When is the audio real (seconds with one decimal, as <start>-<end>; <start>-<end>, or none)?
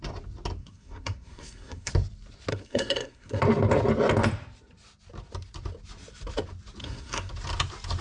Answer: 0.0-0.6; 1.9-2.5; 3.4-6.8; 7.3-8.0